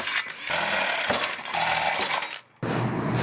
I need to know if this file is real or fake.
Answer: real